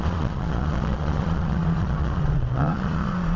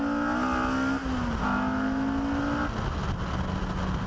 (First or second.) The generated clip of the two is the first